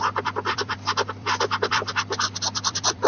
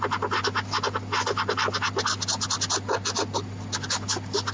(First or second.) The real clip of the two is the second